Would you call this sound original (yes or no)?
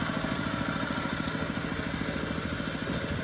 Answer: yes